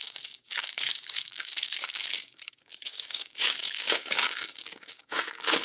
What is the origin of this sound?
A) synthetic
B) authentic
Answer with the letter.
A